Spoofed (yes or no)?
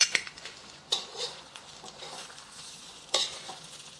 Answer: yes